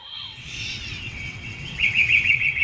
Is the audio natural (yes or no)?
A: no